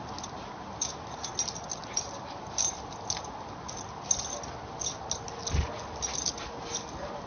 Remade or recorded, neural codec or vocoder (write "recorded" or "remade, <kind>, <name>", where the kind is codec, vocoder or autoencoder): recorded